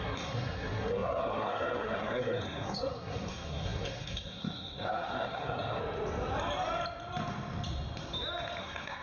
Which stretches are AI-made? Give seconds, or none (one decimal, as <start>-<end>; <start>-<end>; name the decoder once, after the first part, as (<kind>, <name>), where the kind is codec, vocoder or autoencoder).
0.0-5.8 (codec, SNAC); 8.6-9.0